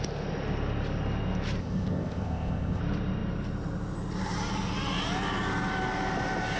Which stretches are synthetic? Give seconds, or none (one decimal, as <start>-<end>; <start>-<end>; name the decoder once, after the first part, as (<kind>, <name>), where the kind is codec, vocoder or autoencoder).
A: 1.6-2.8 (codec, ZipCodec)